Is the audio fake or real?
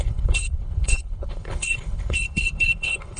fake